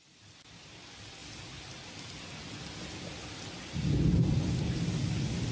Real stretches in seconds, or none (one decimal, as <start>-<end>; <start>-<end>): 0.0-5.5